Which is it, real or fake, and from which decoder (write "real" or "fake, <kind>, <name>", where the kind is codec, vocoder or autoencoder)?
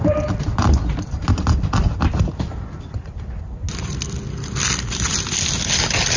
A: real